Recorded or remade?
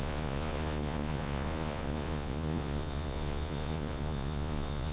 remade